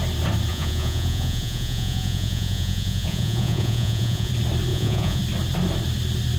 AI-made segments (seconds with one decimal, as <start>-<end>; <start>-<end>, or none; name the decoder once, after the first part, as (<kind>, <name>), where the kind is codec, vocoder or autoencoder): 0.5-4.3 (vocoder, Vocos); 4.7-5.2